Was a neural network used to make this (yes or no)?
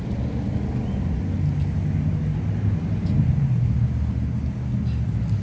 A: no